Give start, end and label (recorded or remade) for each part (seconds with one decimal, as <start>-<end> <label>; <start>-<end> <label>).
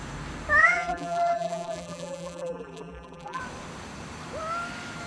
0.0-0.6 recorded; 0.6-3.4 remade; 3.4-5.1 recorded